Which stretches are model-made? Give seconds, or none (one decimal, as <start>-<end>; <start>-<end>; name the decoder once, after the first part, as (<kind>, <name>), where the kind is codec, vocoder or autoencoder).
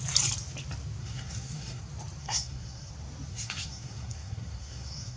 1.0-1.8 (codec, SNAC); 2.2-2.9; 3.3-5.2